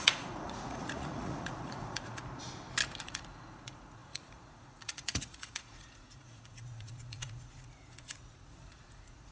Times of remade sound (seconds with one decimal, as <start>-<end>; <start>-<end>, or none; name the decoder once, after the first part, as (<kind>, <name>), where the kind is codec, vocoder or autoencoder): 0.0-2.2 (vocoder, Vocos); 3.0-9.3

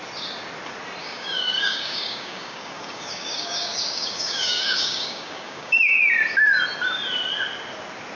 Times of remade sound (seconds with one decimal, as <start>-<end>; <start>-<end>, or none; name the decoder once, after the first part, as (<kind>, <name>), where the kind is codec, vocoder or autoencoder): 1.0-5.9 (codec, DAC)

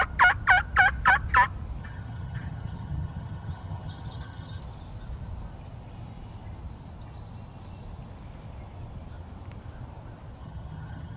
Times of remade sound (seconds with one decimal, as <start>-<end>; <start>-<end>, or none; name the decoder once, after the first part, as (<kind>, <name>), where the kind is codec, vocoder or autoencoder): 1.8-4.6 (vocoder, HiFi-GAN); 10.4-11.2